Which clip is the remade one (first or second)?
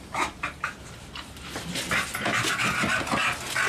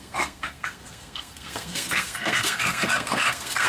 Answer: second